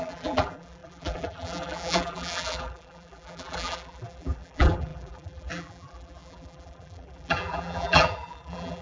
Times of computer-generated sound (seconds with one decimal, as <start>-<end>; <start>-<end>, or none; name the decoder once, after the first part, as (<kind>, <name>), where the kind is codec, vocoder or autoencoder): 0.0-8.8 (vocoder, BigVGAN v2)